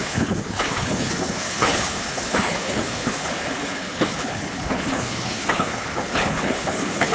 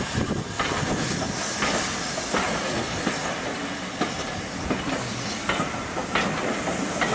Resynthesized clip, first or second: first